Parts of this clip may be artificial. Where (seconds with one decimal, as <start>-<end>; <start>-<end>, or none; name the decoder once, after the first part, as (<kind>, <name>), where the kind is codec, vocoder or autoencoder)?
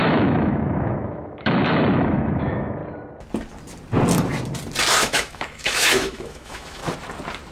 0.0-2.8 (autoencoder, DAC-VAE); 5.0-6.8